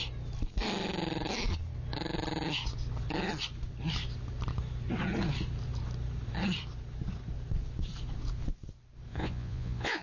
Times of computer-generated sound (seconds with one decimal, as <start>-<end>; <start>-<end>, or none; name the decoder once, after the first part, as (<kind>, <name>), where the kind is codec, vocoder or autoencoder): 9.1-10.0 (vocoder, Vocos)